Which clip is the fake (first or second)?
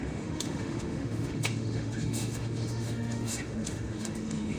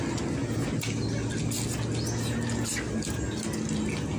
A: first